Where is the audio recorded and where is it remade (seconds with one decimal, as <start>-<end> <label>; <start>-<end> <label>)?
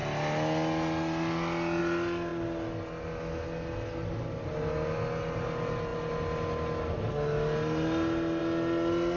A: 0.0-9.2 recorded